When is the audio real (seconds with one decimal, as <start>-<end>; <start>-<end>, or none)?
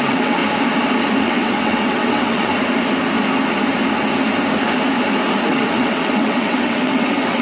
0.4-1.2; 2.5-5.5